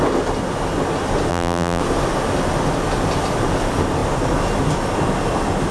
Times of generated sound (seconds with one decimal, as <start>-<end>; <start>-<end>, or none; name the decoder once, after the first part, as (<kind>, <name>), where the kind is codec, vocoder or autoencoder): 1.3-1.8 (vocoder, BigVGAN v2)